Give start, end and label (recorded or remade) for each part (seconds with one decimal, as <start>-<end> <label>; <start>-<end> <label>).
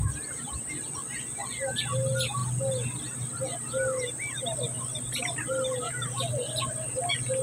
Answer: 0.0-7.4 recorded